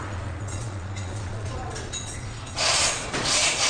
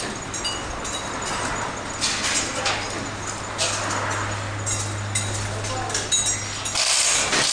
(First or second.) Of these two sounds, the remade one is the first